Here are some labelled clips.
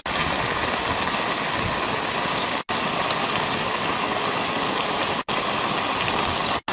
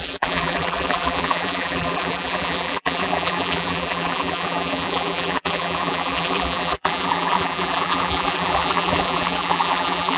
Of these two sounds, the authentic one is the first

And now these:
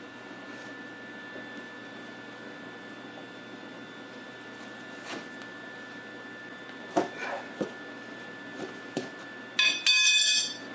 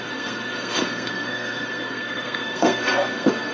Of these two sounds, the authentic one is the first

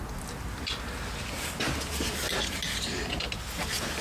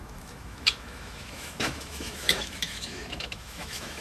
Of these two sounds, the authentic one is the first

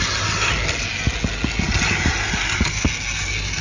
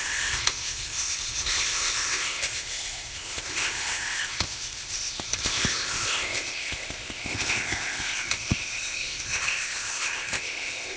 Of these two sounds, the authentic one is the first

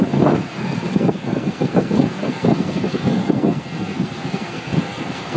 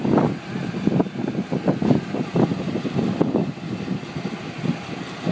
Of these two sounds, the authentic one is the second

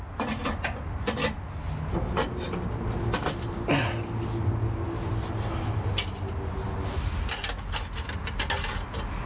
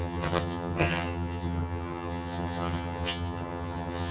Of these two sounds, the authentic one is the first